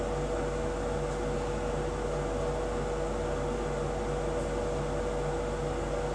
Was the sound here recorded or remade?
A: recorded